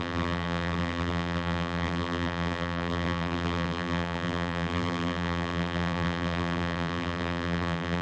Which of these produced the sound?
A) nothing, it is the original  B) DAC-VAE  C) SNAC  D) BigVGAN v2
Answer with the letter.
D